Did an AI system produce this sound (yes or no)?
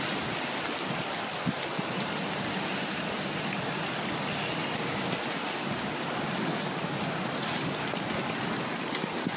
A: no